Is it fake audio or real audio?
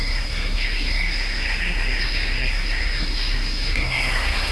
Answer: fake